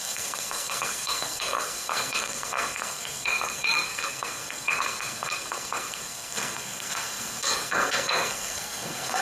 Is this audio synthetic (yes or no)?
yes